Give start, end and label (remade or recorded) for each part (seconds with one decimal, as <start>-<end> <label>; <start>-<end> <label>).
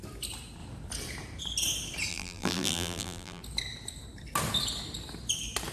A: 0.0-2.1 recorded; 2.1-3.4 remade; 3.4-5.7 recorded